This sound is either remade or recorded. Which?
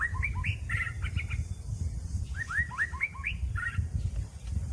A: recorded